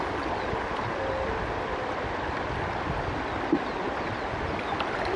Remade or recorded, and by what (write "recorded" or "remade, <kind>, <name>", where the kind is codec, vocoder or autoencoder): recorded